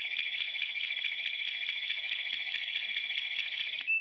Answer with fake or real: fake